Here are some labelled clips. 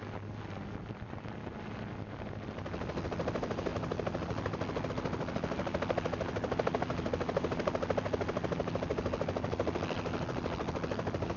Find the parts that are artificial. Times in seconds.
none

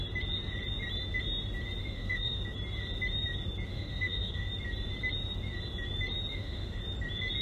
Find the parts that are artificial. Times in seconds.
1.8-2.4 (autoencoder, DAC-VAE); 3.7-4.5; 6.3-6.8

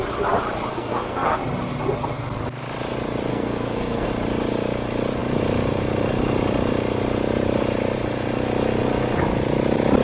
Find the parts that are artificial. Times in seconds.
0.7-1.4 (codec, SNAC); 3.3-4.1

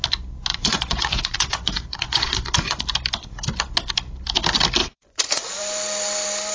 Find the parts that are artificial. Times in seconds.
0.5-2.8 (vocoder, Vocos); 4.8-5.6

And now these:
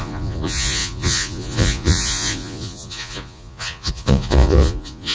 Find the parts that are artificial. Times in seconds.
0.0-5.1 (vocoder, Vocos)